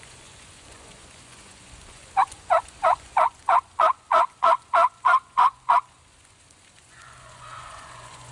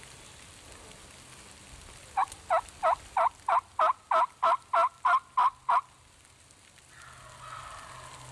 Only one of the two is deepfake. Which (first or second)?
first